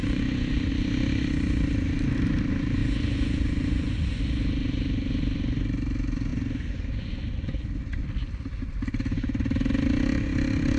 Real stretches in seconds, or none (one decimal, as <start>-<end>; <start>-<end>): 0.7-2.8; 4.2-10.8